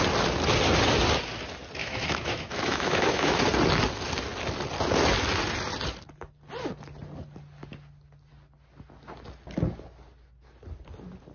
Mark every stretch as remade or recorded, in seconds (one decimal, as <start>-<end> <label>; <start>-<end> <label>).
0.0-1.8 recorded; 1.8-3.4 remade; 3.4-11.3 recorded